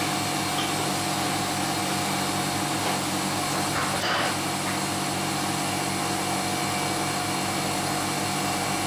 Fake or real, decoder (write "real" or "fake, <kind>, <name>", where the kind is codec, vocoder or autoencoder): real